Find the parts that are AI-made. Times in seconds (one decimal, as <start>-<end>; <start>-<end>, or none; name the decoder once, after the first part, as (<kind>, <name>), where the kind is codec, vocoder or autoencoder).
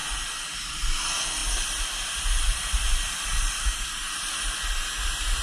0.0-0.8 (vocoder, BigVGAN v2); 1.4-4.6